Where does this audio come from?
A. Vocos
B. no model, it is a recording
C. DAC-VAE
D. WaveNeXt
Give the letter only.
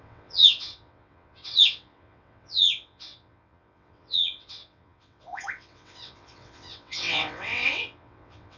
D